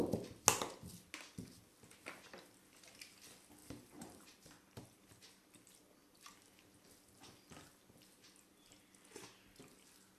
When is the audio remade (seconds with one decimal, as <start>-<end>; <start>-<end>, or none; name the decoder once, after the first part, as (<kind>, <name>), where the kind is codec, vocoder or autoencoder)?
3.6-5.1 (vocoder, BigVGAN v2)

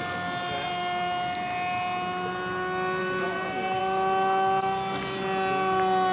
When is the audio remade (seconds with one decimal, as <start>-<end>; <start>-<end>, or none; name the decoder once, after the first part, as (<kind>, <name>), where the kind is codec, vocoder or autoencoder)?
3.0-3.8 (vocoder, BigVGAN v2)

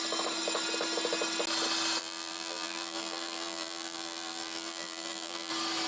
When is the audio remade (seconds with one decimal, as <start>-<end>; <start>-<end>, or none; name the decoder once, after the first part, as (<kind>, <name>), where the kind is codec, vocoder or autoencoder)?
2.0-5.5 (vocoder, BigVGAN v2)

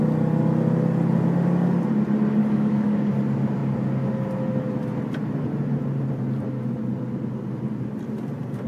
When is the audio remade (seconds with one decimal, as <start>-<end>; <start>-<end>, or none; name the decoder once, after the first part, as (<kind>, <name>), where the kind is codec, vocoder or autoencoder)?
2.4-3.1 (codec, DAC)

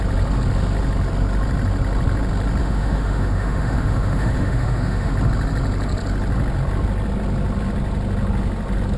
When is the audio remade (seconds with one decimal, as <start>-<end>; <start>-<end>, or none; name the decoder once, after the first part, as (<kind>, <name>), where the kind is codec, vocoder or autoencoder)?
2.6-5.1 (autoencoder, DAC-VAE)

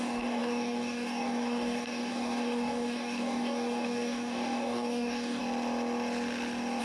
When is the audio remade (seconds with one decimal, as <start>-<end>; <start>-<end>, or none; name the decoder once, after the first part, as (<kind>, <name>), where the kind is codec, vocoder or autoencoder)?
0.0-5.4 (codec, DAC)

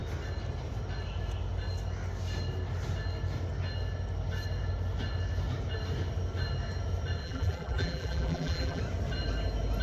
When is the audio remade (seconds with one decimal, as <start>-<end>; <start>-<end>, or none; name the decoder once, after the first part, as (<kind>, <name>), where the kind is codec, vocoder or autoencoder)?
7.2-8.8 (vocoder, BigVGAN v2)

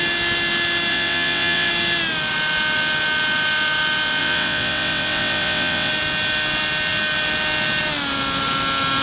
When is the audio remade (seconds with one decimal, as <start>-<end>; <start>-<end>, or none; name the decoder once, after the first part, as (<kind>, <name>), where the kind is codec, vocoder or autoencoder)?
0.9-1.7 (vocoder, WaveNeXt); 4.2-5.9